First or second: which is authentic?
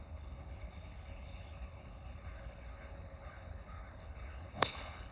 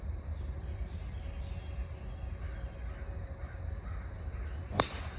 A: second